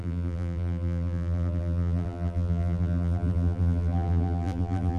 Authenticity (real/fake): fake